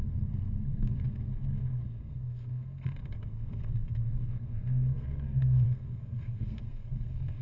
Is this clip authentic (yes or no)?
no